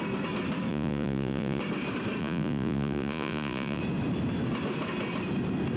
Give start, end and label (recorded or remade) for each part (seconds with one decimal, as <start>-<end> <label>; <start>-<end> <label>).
0.0-0.7 recorded; 0.7-1.6 remade; 1.6-2.2 recorded; 2.2-3.8 remade; 3.8-5.8 recorded